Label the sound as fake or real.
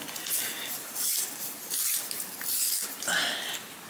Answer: real